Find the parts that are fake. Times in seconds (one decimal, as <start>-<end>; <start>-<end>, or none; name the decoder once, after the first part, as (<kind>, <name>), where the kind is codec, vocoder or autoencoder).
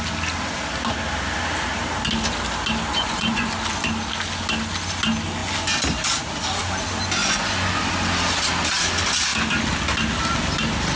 2.9-3.5 (vocoder, Vocos); 7.2-7.8